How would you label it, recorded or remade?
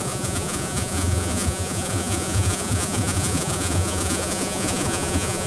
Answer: remade